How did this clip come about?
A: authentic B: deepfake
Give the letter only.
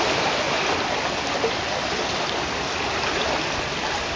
A